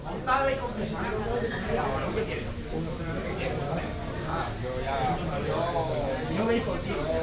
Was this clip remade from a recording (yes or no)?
no